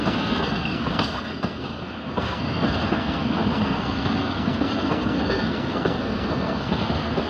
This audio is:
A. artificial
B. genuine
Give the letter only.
A